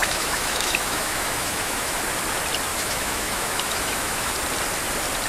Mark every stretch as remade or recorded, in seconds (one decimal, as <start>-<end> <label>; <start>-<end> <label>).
0.0-2.0 remade; 2.0-2.7 recorded; 2.7-4.3 remade; 4.3-5.3 recorded